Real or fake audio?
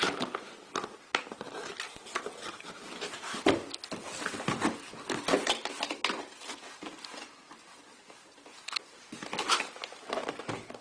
real